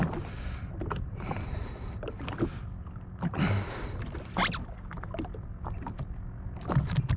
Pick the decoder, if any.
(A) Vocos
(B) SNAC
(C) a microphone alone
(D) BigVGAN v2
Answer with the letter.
C